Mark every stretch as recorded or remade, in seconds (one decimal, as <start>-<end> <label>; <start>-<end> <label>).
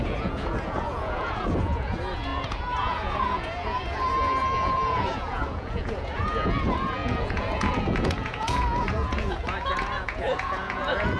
0.0-11.2 remade